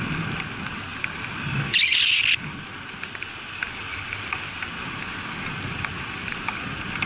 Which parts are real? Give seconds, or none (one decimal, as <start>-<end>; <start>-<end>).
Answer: 0.0-7.1